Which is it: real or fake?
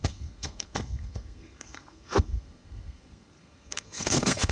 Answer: fake